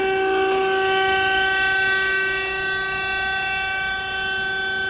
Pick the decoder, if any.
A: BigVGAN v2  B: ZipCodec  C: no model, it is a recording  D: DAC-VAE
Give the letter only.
C